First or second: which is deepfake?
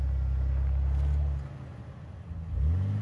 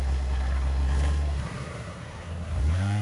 second